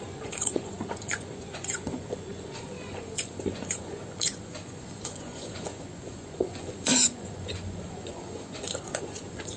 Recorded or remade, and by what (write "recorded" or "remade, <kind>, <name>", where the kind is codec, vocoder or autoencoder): remade, vocoder, Vocos